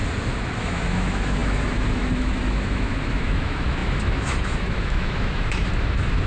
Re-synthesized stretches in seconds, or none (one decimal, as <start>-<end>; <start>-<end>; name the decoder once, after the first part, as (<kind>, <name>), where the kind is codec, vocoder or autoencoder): 0.6-6.3 (autoencoder, DAC-VAE)